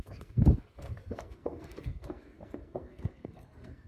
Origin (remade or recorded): remade